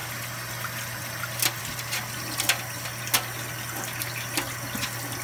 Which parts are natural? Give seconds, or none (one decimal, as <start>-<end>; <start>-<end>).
0.0-5.2

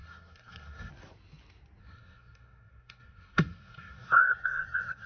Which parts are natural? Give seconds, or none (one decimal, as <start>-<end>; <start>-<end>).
0.9-1.8

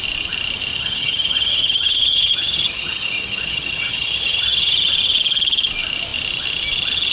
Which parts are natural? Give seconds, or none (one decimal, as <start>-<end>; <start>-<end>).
0.0-0.7; 4.9-7.1

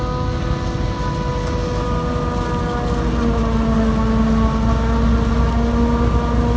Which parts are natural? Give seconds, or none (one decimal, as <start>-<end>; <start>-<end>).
0.0-6.6

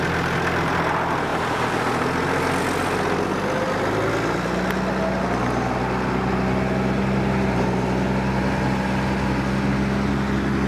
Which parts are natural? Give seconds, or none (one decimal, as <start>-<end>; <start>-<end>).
0.0-10.7

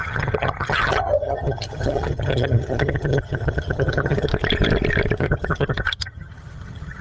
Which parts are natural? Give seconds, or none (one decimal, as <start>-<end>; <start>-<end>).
4.3-5.2